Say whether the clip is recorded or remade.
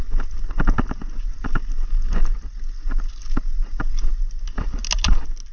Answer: recorded